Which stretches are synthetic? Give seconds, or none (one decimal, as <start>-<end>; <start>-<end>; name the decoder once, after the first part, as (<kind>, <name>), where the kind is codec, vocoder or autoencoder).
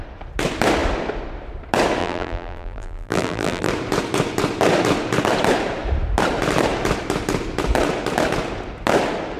2.0-3.7 (vocoder, BigVGAN v2)